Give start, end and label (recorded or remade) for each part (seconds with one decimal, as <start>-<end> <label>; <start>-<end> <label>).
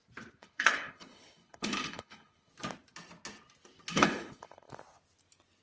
0.0-0.4 recorded; 0.4-2.5 remade; 2.5-3.9 recorded; 3.9-4.7 remade; 4.7-5.6 recorded